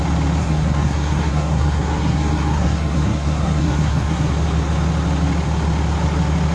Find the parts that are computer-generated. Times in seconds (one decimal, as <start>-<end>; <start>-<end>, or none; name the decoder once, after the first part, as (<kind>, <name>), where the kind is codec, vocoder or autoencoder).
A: 0.4-4.3 (codec, SNAC)